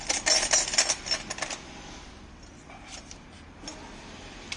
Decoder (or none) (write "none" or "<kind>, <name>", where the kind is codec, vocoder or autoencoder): none